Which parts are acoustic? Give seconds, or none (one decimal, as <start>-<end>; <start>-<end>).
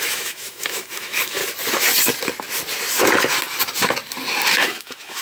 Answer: 1.4-4.5